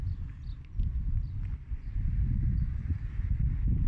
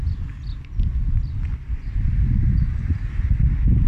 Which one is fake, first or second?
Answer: first